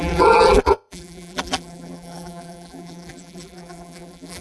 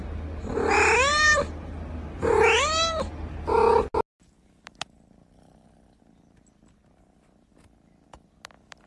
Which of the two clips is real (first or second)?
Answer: second